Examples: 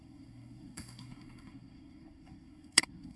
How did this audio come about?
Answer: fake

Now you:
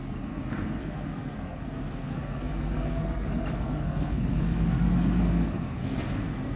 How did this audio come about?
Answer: fake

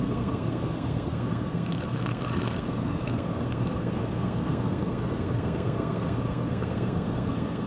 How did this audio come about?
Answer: fake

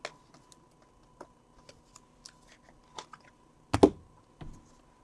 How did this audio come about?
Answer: real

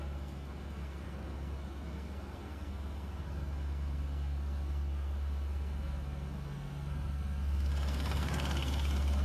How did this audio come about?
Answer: fake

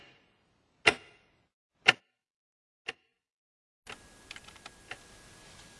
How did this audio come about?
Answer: real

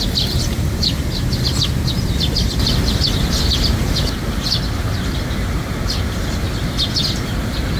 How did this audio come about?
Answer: real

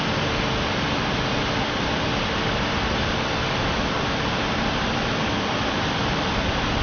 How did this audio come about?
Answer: real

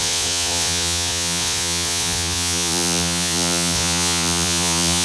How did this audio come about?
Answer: fake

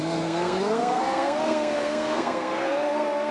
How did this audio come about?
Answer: fake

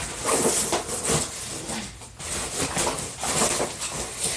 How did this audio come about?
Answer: real